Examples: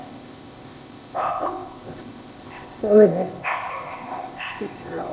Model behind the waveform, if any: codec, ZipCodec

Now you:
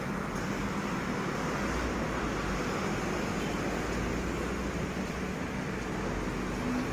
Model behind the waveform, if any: none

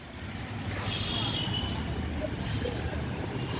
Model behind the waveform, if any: none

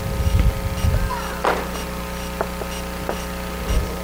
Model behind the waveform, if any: none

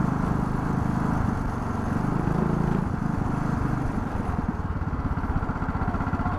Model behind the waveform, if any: none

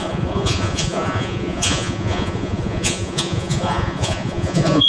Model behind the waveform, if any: vocoder, Vocos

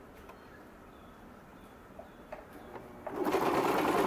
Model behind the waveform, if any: none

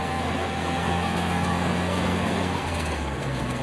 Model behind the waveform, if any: codec, SNAC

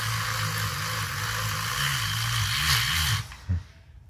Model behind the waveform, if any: none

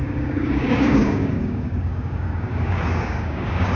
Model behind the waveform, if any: codec, DAC